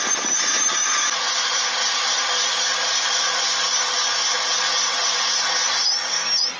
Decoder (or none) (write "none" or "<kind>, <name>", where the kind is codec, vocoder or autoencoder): none